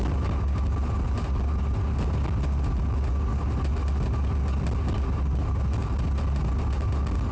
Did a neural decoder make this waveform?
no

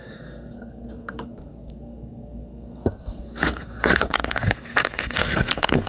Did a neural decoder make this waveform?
yes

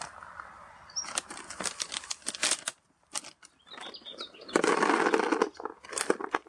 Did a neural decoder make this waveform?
no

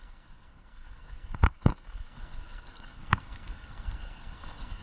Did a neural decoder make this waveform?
yes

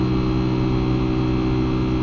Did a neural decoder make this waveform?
no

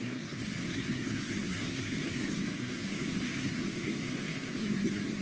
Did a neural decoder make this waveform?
yes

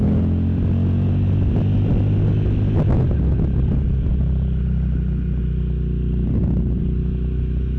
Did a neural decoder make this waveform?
no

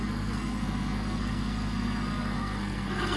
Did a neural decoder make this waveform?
yes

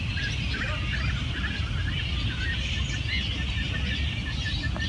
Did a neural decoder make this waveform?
no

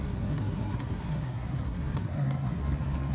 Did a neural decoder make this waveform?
yes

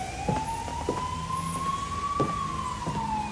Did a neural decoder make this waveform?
no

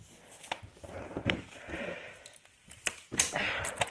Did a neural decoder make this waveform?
no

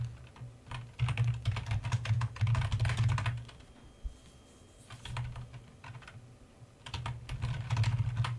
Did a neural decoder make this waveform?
no